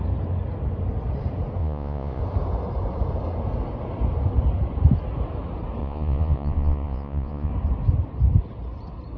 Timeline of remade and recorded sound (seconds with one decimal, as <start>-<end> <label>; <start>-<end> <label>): 0.0-1.6 recorded; 1.6-2.2 remade; 2.2-5.8 recorded; 5.8-7.5 remade; 7.5-9.2 recorded